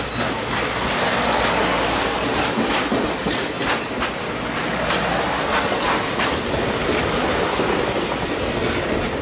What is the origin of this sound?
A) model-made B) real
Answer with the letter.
B